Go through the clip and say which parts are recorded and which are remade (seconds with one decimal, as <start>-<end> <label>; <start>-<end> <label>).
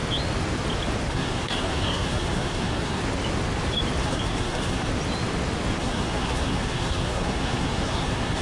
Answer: 0.0-1.1 recorded; 1.1-3.0 remade; 3.0-4.0 recorded; 4.0-4.9 remade; 4.9-5.8 recorded; 5.8-8.4 remade